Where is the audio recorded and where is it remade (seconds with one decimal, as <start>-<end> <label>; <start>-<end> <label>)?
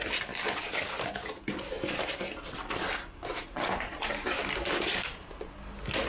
0.0-3.2 recorded; 3.2-5.4 remade; 5.4-6.1 recorded